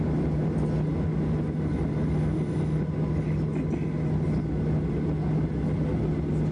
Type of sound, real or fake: real